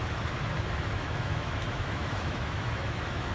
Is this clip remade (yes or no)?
yes